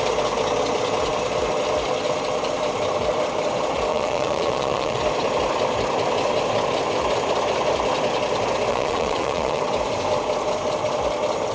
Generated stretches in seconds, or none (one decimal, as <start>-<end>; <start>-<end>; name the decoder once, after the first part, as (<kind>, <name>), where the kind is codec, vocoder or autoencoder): 3.9-5.0 (vocoder, Vocos); 8.7-9.6